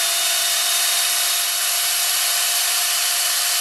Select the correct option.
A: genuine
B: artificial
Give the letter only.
B